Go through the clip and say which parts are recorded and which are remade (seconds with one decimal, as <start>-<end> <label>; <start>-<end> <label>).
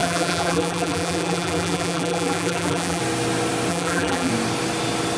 0.0-3.0 remade; 3.0-3.7 recorded; 3.7-4.3 remade; 4.3-5.2 recorded